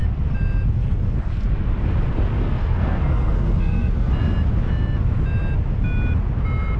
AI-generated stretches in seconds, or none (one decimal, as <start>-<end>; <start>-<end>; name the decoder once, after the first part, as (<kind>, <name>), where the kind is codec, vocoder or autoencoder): 2.4-4.1 (codec, SNAC)

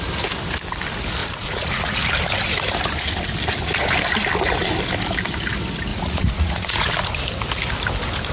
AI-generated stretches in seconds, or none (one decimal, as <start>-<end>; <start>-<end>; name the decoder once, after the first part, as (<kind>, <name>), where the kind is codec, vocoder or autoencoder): 1.2-2.0 (vocoder, Vocos); 5.9-6.9

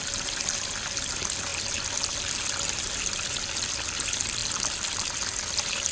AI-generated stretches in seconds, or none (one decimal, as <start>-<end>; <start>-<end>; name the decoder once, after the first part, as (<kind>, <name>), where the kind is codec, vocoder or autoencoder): none

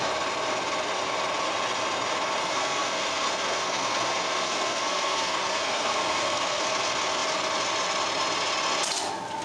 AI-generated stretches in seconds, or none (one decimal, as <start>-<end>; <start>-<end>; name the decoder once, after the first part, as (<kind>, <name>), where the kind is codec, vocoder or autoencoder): 2.4-6.6 (codec, SNAC)